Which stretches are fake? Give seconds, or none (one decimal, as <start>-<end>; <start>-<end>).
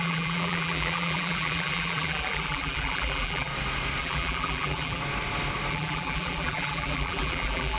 0.0-3.5; 4.0-5.0; 5.7-7.8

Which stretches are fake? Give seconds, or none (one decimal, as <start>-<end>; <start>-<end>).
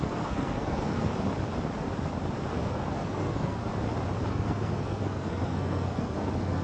0.0-1.1; 2.5-3.7; 4.3-6.6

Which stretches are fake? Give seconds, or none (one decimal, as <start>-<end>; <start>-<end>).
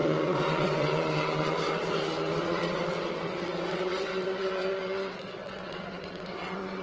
0.0-6.8